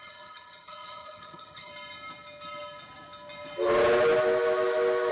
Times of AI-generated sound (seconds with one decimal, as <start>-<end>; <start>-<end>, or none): 0.0-1.7